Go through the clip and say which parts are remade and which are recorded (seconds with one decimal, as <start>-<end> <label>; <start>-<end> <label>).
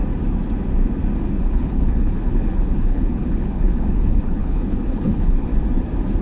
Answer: 0.0-1.4 recorded; 1.4-5.5 remade; 5.5-6.2 recorded